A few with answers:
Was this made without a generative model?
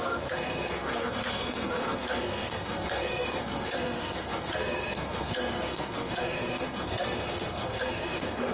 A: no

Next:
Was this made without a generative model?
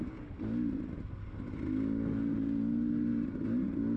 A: yes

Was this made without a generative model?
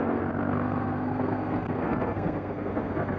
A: no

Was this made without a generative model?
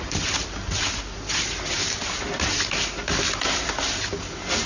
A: yes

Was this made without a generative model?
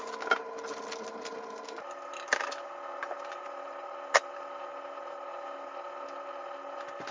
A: yes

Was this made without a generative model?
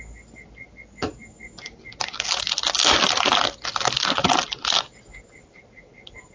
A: yes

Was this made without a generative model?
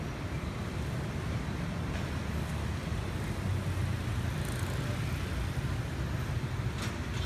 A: yes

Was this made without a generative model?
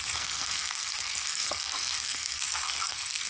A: no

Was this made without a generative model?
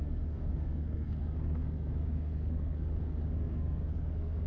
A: no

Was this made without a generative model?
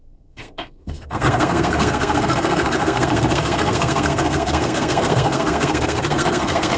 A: no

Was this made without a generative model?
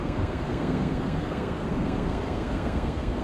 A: no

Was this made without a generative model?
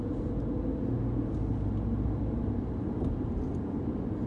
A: yes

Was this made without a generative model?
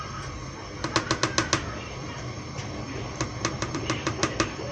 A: yes